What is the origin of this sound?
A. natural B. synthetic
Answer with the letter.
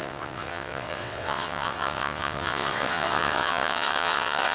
B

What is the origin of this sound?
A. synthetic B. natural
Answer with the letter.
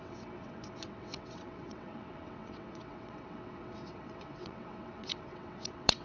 A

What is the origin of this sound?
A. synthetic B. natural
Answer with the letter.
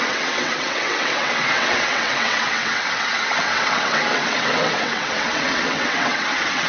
A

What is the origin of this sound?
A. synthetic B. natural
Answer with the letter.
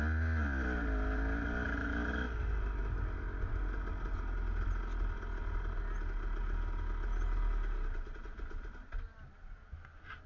B